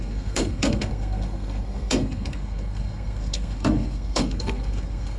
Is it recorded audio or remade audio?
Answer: remade